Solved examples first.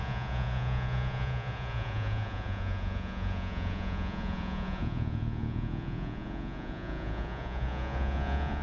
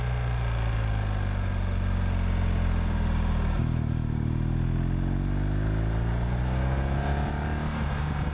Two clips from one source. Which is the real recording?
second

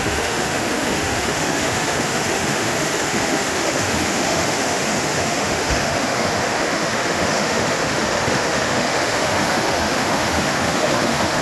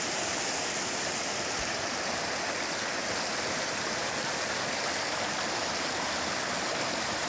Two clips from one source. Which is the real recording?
second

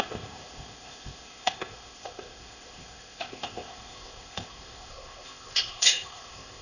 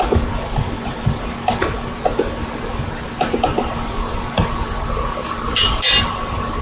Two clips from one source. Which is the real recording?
second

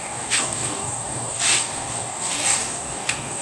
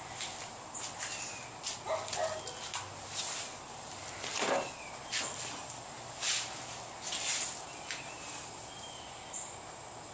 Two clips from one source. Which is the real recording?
second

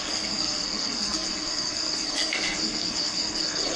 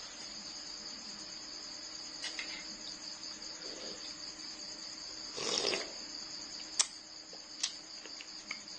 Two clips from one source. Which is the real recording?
second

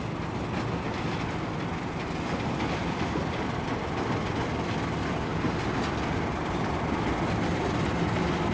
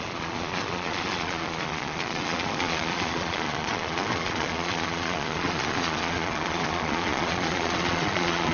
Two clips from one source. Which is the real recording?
first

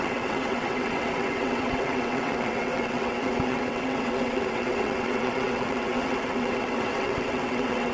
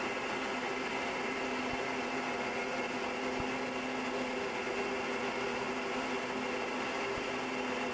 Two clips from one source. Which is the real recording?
second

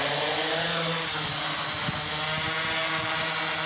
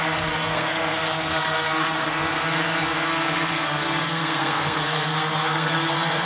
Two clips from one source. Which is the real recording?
first